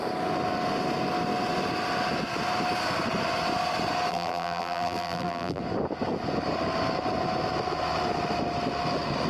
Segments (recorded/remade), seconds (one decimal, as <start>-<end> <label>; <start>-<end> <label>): 0.0-4.1 recorded; 4.1-5.6 remade; 5.6-9.3 recorded